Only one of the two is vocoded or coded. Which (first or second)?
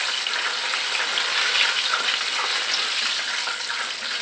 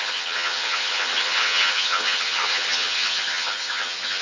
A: second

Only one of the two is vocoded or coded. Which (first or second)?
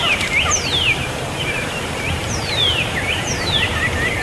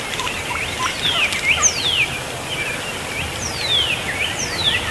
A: first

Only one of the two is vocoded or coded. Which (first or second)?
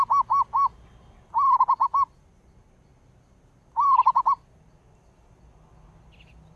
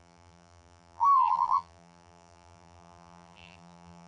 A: second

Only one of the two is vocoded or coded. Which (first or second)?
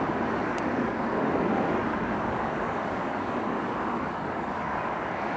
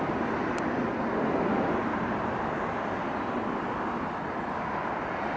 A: first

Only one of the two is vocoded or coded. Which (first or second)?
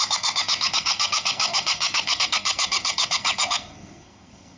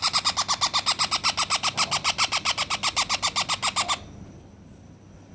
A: first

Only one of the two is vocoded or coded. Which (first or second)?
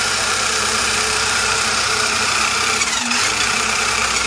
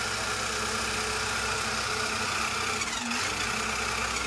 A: first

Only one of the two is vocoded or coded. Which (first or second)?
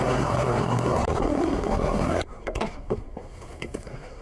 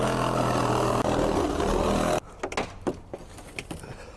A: first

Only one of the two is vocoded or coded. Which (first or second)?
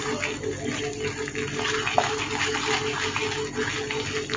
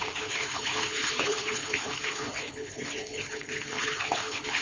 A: second